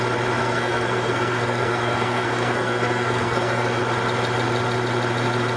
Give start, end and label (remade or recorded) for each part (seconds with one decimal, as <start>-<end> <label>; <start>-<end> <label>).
0.0-0.4 recorded; 0.4-3.8 remade; 3.8-5.6 recorded